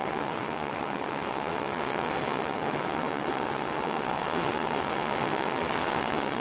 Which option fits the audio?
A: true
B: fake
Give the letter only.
B